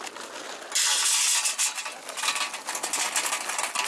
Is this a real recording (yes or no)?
yes